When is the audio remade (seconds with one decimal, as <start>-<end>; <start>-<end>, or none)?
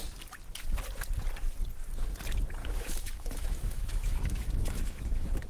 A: 2.6-5.5